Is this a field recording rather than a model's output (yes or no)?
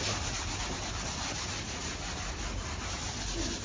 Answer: yes